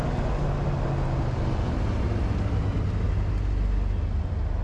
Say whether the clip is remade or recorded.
recorded